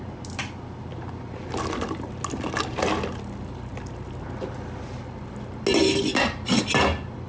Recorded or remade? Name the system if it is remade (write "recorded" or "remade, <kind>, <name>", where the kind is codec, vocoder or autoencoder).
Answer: recorded